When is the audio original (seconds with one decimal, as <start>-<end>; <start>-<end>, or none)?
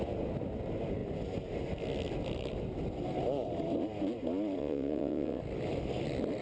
0.0-4.6; 5.4-6.4